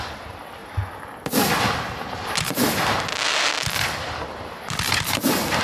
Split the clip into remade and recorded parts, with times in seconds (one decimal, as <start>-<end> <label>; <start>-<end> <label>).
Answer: 0.0-5.6 recorded